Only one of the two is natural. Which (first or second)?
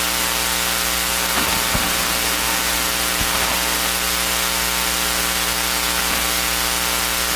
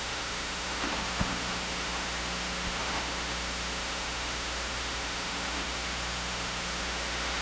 first